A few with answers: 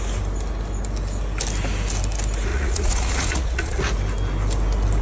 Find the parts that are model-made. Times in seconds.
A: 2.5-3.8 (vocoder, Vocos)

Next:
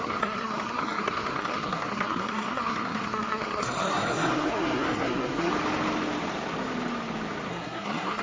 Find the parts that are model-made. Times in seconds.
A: 0.0-5.5 (codec, SNAC); 7.5-8.2

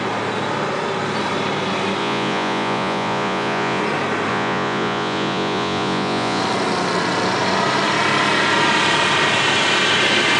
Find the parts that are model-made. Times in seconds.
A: 2.0-3.8 (vocoder, Vocos); 4.3-6.4

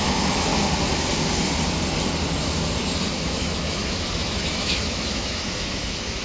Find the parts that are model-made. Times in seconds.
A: 0.0-0.5 (autoencoder, DAC-VAE); 3.1-6.2